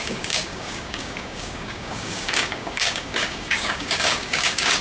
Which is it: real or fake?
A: fake